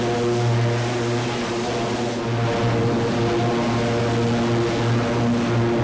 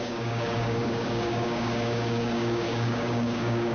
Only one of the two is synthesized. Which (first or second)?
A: second